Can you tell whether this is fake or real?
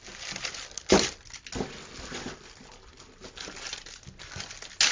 real